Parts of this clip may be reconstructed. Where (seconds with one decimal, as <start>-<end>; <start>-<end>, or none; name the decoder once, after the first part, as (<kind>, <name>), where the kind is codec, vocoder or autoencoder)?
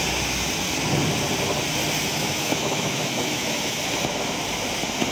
2.1-3.8 (autoencoder, DAC-VAE)